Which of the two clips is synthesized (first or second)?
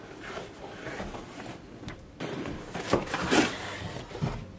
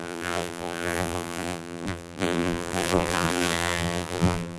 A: second